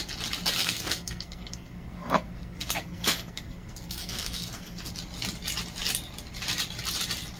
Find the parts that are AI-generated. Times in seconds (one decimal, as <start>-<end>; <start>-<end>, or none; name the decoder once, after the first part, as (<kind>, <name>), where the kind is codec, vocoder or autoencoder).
0.6-4.9 (codec, SNAC)